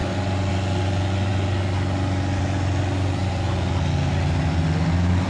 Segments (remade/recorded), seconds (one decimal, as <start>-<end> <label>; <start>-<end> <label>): 0.0-5.3 recorded